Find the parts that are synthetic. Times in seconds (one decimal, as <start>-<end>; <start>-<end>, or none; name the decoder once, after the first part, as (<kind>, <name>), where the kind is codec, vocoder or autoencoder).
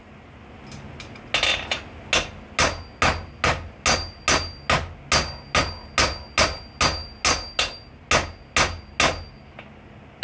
none